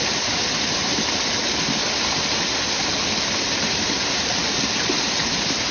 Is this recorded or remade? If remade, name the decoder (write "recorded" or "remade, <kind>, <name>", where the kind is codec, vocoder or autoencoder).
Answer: recorded